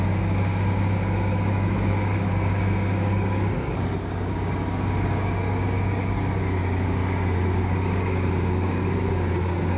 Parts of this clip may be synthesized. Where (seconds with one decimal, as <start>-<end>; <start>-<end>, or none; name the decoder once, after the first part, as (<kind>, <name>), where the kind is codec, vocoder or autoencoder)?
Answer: 0.0-7.0 (codec, DAC); 7.6-9.8